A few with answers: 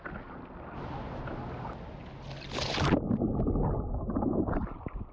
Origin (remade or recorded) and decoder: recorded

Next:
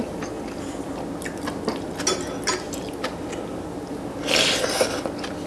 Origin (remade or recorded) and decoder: recorded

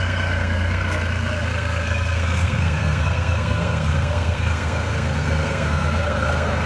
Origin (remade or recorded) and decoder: remade, codec, SNAC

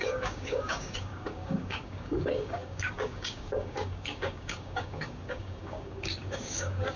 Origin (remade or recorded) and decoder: remade, codec, DAC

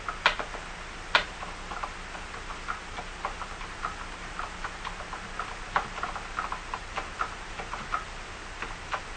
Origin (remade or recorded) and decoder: recorded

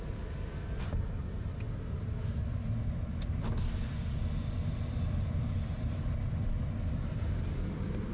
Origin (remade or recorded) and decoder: recorded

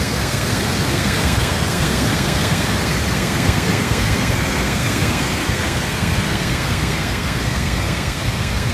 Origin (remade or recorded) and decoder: remade, codec, SNAC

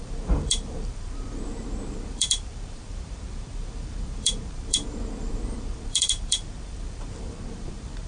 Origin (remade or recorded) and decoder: remade, vocoder, BigVGAN v2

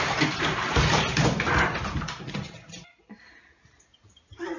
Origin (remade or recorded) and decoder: recorded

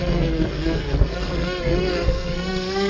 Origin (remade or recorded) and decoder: remade, codec, SNAC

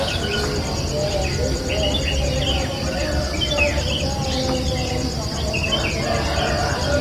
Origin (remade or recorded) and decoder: recorded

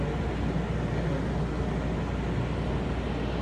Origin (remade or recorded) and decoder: recorded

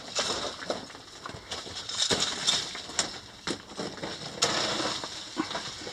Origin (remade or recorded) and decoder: recorded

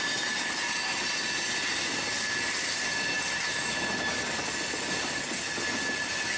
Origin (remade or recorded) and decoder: recorded